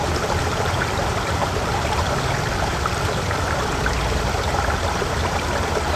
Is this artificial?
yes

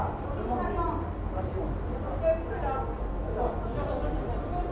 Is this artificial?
no